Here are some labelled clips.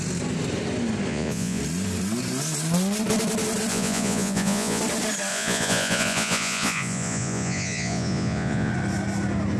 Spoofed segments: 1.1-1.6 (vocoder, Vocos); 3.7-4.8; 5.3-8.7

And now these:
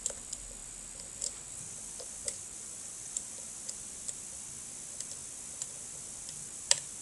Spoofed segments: 0.0-7.0 (vocoder, BigVGAN v2)

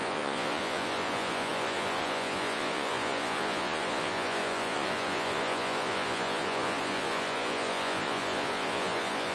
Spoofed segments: 0.0-9.3 (vocoder, Vocos)

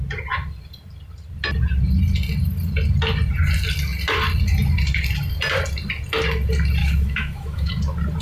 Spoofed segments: 6.8-7.7 (autoencoder, DAC-VAE)

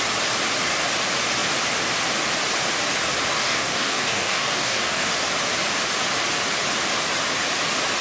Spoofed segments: 3.3-5.1 (codec, DAC)